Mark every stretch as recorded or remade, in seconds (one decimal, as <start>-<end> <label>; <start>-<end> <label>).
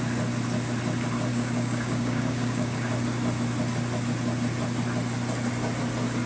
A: 0.0-1.3 recorded; 1.3-2.9 remade; 2.9-6.3 recorded